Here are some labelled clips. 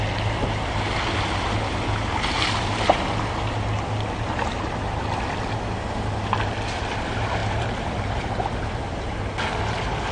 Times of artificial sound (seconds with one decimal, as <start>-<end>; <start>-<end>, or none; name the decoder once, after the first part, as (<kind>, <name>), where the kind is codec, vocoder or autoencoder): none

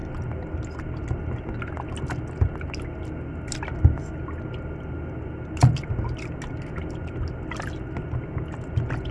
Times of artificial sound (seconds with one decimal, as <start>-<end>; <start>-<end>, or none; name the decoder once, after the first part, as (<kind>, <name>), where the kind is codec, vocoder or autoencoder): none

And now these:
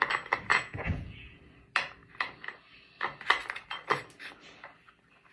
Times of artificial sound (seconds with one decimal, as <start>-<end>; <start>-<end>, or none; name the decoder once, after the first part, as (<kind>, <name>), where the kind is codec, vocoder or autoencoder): 0.5-1.4 (vocoder, Vocos)

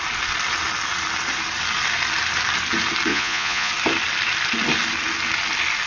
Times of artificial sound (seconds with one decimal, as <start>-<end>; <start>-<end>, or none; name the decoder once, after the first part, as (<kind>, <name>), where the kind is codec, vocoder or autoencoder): 3.1-3.7 (vocoder, Vocos)

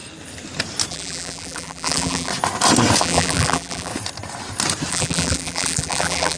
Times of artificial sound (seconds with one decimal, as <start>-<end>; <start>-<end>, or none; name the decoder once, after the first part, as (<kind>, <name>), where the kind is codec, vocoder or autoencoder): 0.9-2.3 (vocoder, BigVGAN v2); 3.0-3.9; 4.9-6.4

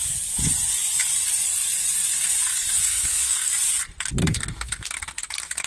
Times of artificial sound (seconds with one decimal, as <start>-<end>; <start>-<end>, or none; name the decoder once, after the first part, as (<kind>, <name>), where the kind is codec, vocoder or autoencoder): 2.9-3.5 (codec, SNAC); 4.2-4.9

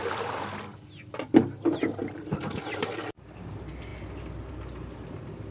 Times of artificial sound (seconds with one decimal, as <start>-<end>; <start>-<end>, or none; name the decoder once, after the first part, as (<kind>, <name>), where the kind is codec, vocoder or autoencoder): 0.0-0.7 (vocoder, BigVGAN v2); 2.8-3.9; 4.5-5.5